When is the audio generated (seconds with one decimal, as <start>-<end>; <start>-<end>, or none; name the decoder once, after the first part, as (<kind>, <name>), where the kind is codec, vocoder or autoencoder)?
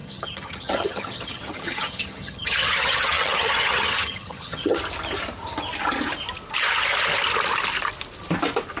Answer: 0.0-4.8 (vocoder, HiFi-GAN)